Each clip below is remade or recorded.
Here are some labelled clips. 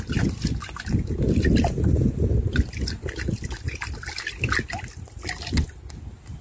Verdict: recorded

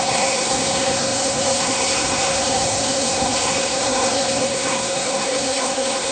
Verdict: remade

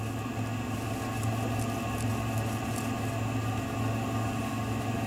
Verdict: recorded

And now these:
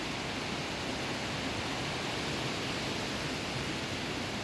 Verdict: recorded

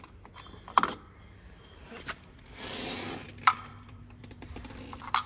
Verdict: remade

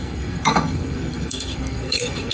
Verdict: remade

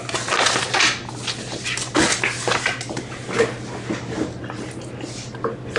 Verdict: recorded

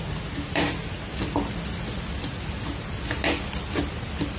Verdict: recorded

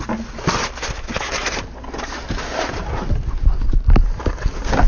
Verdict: recorded